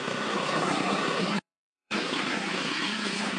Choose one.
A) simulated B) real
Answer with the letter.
A